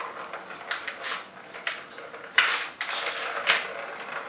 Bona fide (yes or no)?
yes